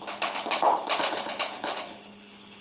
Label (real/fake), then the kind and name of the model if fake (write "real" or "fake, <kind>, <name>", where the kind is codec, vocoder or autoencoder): fake, codec, HILCodec